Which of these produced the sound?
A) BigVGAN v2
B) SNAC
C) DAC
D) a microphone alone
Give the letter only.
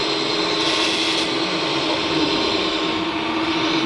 D